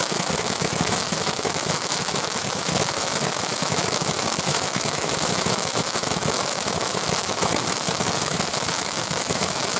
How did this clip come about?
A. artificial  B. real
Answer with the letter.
A